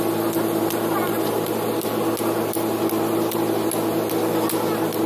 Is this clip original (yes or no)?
yes